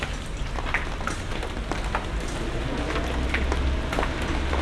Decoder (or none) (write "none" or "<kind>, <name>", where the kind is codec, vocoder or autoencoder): none